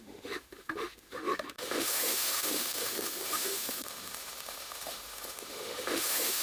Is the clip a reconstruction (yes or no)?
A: yes